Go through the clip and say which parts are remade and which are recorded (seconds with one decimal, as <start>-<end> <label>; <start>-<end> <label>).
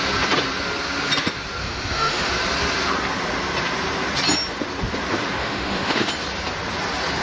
0.0-1.6 recorded; 1.6-2.3 remade; 2.3-5.4 recorded; 5.4-6.1 remade; 6.1-7.2 recorded